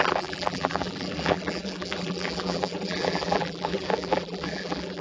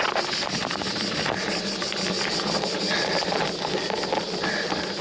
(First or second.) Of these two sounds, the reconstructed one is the first